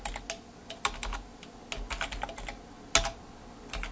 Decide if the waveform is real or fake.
real